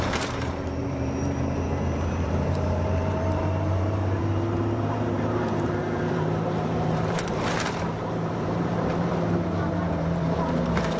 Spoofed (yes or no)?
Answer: yes